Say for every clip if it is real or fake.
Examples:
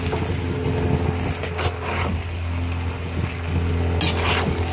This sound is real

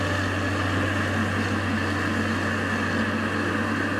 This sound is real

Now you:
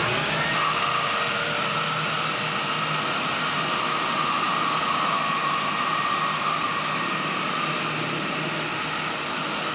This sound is real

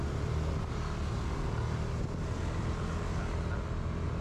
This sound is real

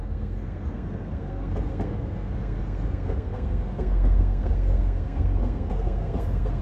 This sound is fake